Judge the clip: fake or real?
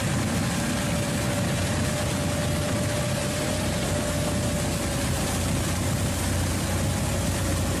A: real